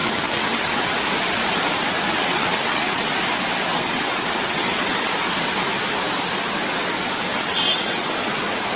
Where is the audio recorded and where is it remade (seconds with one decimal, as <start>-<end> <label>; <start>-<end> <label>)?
0.0-0.8 remade; 0.8-2.1 recorded; 2.1-3.1 remade; 3.1-3.7 recorded; 3.7-5.1 remade; 5.1-7.3 recorded; 7.3-8.1 remade; 8.1-8.8 recorded